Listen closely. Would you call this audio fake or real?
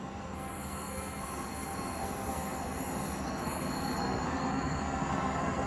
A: fake